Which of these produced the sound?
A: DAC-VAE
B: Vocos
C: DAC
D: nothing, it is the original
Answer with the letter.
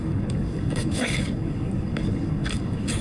C